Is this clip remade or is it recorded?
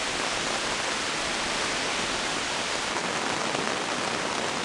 recorded